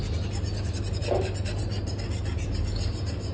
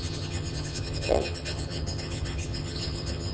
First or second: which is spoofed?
second